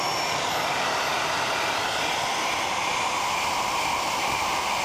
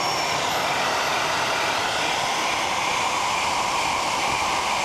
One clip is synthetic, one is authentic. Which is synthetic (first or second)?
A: second